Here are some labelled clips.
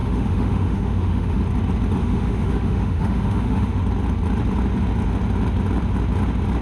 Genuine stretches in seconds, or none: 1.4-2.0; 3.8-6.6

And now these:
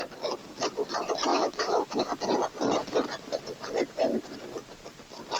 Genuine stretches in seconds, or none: 0.0-1.3; 2.1-5.4

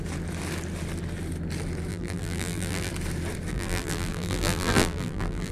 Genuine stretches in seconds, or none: 0.0-1.9; 2.9-3.5